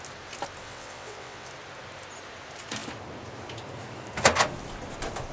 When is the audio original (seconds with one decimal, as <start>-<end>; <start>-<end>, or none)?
0.0-0.6; 1.5-5.3